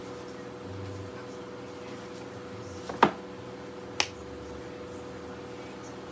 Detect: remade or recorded recorded